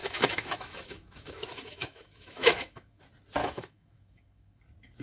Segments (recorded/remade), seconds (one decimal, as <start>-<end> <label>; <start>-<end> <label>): 0.0-3.0 remade; 3.0-3.4 recorded; 3.4-4.6 remade; 4.6-5.0 recorded